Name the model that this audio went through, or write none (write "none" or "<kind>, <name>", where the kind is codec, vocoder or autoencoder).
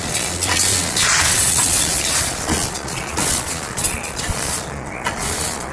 vocoder, Vocos